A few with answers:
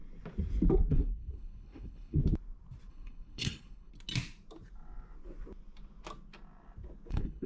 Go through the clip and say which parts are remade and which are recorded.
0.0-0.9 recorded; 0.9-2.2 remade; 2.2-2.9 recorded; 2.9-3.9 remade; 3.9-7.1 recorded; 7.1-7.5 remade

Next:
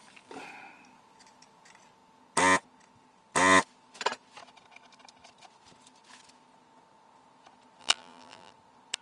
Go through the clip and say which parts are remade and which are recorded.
0.0-7.8 recorded; 7.8-8.5 remade; 8.5-9.0 recorded

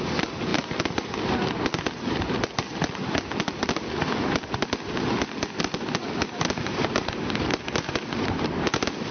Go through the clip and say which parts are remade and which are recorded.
0.0-9.1 recorded

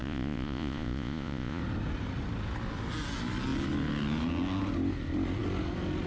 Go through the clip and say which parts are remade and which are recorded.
0.0-1.6 remade; 1.6-6.1 recorded

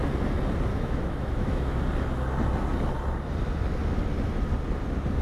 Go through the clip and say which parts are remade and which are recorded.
0.0-0.7 recorded; 0.7-1.8 remade; 1.8-5.2 recorded